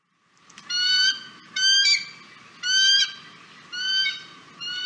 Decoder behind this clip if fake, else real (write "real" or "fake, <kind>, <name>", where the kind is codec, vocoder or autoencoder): real